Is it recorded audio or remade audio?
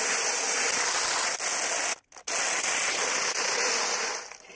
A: recorded